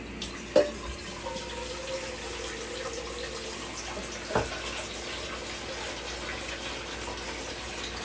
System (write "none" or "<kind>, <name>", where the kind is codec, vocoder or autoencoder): none